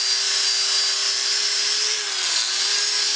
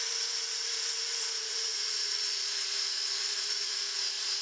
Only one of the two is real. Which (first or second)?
first